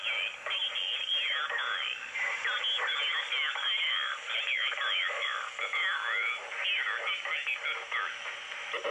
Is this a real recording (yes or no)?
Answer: yes